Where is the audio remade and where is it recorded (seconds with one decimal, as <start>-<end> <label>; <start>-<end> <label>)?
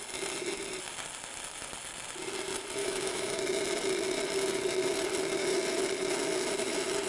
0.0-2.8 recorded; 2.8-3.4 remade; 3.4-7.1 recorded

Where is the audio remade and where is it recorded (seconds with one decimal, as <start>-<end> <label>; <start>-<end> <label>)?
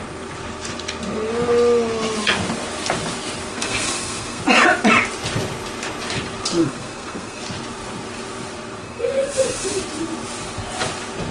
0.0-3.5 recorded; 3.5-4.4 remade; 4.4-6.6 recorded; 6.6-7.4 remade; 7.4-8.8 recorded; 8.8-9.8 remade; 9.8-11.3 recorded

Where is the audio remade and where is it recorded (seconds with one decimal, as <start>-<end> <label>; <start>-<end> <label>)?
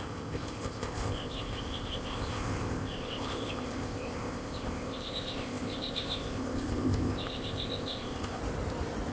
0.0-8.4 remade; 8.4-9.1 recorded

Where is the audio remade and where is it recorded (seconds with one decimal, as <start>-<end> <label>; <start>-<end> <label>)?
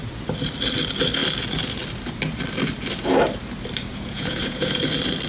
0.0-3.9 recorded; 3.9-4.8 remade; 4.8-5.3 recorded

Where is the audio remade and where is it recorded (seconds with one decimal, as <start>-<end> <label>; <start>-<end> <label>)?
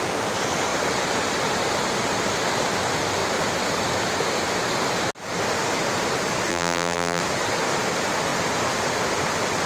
0.0-6.5 recorded; 6.5-7.2 remade; 7.2-9.7 recorded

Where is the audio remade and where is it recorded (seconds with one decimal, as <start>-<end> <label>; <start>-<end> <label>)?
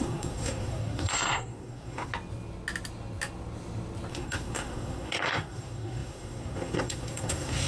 0.0-2.1 remade; 2.1-4.1 recorded; 4.1-7.7 remade